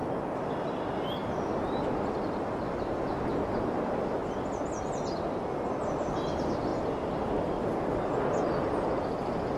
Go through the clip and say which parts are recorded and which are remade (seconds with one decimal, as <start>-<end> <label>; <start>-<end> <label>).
0.0-9.6 recorded